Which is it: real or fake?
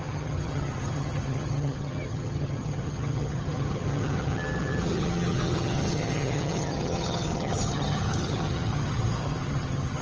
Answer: fake